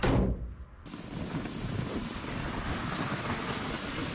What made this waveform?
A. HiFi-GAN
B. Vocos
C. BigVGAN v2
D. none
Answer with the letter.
D